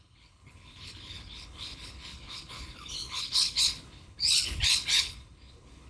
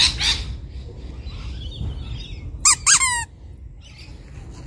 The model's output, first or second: first